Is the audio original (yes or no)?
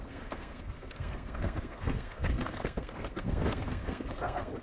no